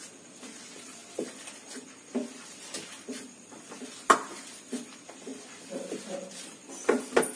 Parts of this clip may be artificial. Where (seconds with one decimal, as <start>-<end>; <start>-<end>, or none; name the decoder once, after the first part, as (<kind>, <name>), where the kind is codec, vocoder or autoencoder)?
none